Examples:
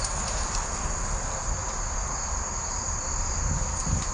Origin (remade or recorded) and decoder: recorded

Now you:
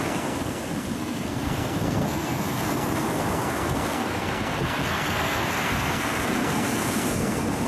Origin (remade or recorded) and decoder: remade, codec, SNAC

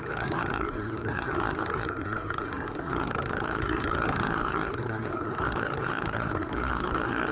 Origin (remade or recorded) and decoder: remade, codec, SNAC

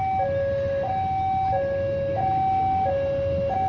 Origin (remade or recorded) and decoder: recorded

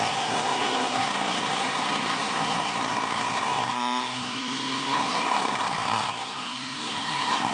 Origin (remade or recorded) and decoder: remade, codec, SNAC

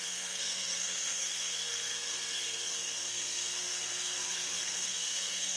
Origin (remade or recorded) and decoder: remade, codec, SNAC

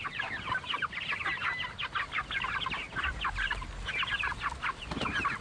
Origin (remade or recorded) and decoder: recorded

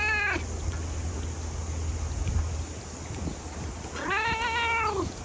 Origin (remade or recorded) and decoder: recorded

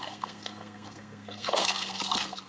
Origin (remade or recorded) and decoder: remade, codec, SNAC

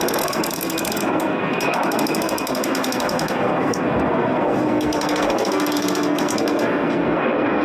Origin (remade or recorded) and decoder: remade, codec, SNAC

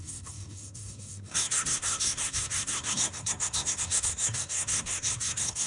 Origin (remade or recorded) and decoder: remade, codec, SNAC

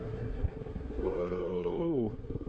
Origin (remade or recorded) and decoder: remade, codec, SNAC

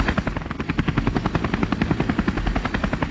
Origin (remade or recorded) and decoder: recorded